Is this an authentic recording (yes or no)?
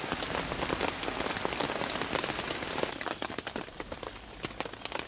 yes